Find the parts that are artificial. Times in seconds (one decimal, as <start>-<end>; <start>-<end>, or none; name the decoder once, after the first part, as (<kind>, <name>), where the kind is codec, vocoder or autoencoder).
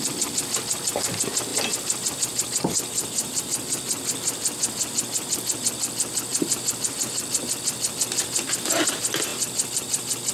1.5-3.4 (vocoder, BigVGAN v2); 9.3-10.3